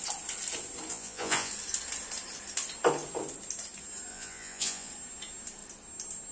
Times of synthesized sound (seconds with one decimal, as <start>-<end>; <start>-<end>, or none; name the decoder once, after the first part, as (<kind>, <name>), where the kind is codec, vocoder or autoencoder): 0.9-1.5 (vocoder, Vocos); 4.1-4.9